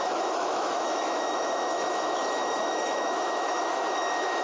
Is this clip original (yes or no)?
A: no